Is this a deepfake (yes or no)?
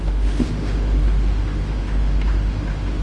yes